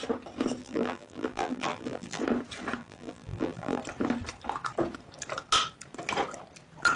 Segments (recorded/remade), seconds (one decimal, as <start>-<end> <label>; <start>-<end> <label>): 0.0-0.6 recorded; 0.6-2.2 remade; 2.2-2.8 recorded; 2.8-3.8 remade; 3.8-7.0 recorded